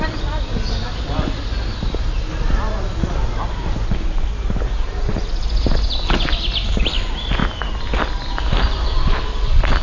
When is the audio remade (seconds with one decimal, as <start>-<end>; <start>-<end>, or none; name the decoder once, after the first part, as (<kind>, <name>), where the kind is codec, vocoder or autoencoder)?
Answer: none